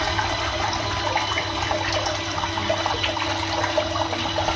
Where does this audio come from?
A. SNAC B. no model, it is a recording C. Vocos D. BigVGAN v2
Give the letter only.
B